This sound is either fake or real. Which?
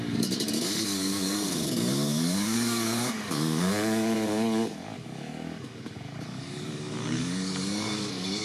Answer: fake